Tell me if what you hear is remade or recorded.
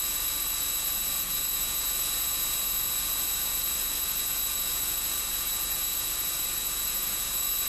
remade